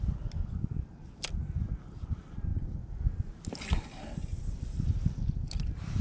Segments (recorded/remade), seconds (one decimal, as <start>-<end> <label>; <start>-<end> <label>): 0.0-6.0 recorded